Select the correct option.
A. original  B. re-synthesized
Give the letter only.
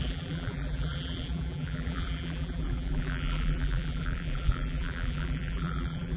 B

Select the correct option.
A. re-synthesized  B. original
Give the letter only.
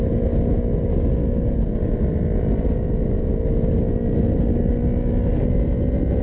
B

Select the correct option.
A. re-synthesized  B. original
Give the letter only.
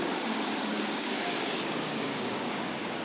A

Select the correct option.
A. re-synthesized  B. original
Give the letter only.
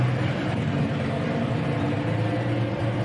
A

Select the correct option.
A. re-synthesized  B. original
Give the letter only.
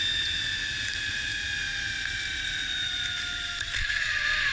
B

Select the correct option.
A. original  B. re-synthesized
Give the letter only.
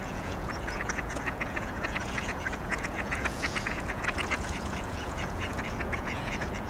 B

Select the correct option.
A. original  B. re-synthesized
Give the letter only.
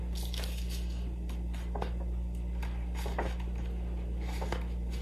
A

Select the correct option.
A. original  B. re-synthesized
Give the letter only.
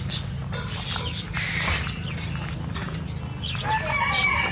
A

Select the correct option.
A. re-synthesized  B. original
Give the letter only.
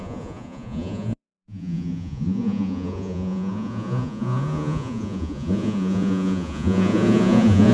A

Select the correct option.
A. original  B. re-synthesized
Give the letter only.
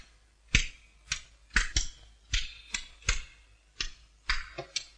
A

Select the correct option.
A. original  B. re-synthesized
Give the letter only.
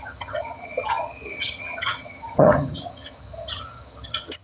B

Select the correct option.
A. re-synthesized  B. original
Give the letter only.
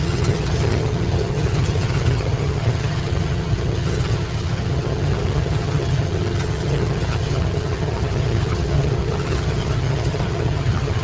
A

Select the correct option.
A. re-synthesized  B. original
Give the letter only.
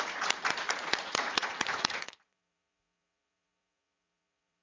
A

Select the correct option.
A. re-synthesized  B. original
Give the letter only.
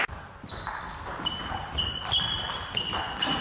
A